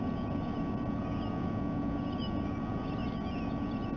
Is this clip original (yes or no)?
yes